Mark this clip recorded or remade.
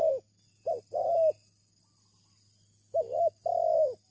recorded